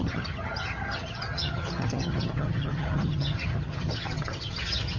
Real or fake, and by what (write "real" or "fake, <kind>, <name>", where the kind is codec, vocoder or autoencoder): fake, vocoder, HiFi-GAN